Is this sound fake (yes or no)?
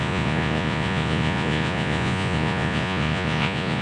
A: yes